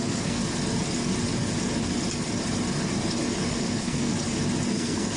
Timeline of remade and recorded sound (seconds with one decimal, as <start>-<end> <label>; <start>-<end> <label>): 0.0-0.4 remade; 0.4-3.5 recorded; 3.5-4.1 remade; 4.1-4.7 recorded; 4.7-5.2 remade